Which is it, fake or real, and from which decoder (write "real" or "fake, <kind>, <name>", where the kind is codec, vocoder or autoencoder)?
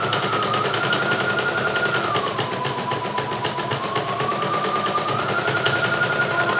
real